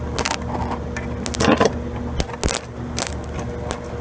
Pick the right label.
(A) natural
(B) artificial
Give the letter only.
A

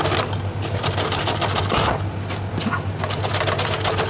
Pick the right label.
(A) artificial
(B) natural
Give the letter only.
B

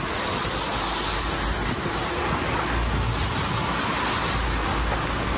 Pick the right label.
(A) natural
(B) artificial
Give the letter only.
A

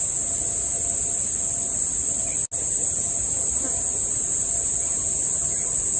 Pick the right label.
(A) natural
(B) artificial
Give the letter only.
A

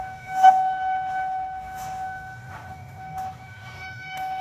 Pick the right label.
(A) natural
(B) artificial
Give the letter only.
B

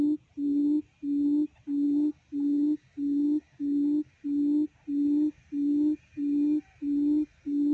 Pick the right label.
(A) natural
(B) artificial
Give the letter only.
A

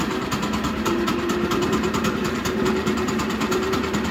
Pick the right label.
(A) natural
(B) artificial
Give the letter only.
B